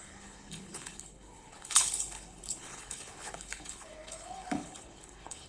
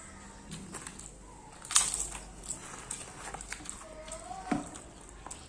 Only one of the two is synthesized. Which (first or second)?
first